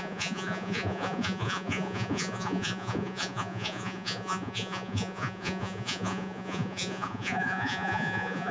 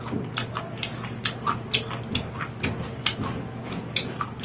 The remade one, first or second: first